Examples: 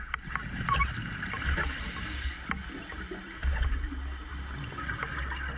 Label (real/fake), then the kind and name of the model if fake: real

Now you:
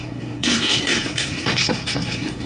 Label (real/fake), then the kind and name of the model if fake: fake, codec, SNAC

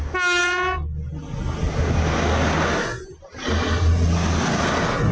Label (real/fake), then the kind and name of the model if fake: real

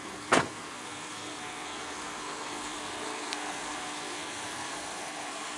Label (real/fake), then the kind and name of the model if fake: fake, codec, SNAC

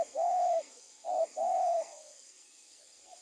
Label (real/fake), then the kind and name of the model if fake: fake, codec, SNAC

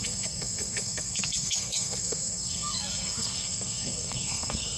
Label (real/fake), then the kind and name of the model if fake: fake, codec, SNAC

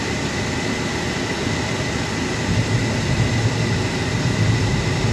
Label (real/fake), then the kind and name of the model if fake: real